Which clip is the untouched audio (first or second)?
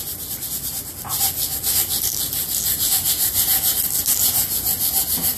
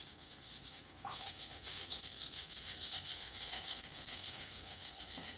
first